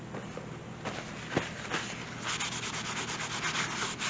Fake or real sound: real